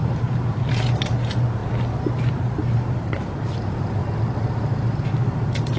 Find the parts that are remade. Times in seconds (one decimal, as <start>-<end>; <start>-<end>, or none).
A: 0.0-1.6; 2.3-4.0; 4.5-5.8